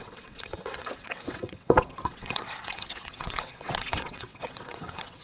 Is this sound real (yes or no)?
no